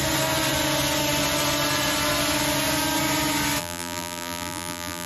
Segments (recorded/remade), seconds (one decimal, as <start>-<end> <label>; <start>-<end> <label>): 0.0-3.6 recorded; 3.6-5.1 remade